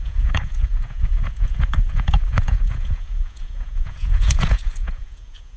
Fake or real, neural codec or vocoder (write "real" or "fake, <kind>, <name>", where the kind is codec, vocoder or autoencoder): fake, vocoder, Vocos